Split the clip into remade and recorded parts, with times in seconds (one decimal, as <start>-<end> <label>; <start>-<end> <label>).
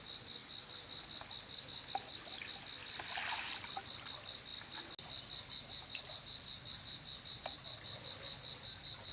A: 0.0-9.1 recorded